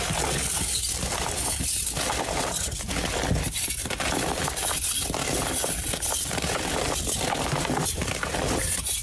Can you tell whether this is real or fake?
real